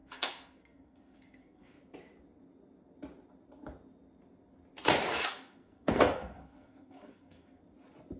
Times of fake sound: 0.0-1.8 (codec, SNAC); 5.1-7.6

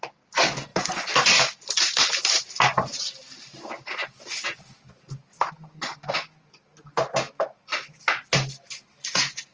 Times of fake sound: 0.7-5.5 (vocoder, BigVGAN v2)

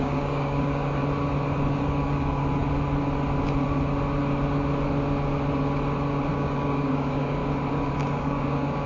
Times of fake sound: 0.0-1.0 (codec, DAC); 1.7-2.4; 6.3-7.4; 7.9-8.9

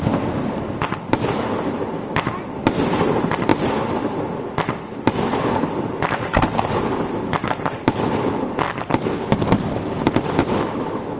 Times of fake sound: none

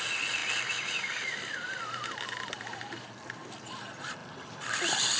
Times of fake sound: none

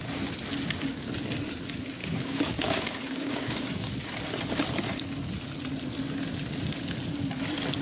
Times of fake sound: 2.0-3.9 (codec, DAC)

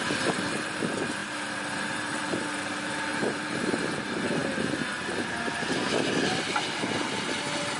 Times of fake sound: 1.2-2.2 (vocoder, BigVGAN v2); 3.1-3.8

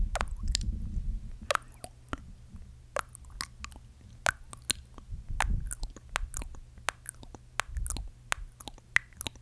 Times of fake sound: none